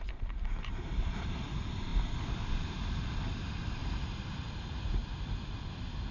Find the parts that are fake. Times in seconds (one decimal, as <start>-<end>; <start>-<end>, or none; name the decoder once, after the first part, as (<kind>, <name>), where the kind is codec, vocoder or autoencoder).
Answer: 0.0-1.9 (vocoder, BigVGAN v2); 2.5-5.0